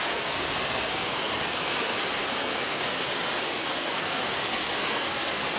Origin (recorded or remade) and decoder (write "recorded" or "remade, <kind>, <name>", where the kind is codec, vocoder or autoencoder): remade, codec, SNAC